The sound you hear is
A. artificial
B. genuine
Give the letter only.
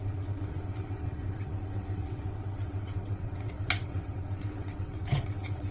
A